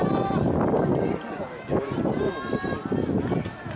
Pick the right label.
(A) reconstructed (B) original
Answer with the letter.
B